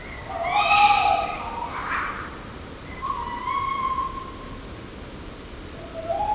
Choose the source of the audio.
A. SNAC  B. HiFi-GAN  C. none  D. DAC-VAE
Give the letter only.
C